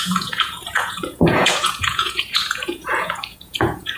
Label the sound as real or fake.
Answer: fake